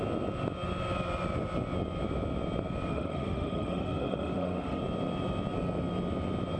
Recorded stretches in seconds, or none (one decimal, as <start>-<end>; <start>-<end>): 0.0-2.9; 4.8-6.6